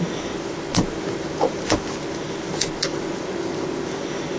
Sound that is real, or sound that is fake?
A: real